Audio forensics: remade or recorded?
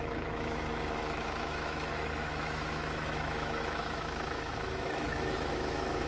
remade